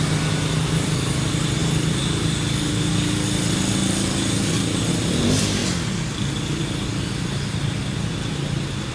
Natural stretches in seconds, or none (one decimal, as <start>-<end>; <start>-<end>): 0.0-8.9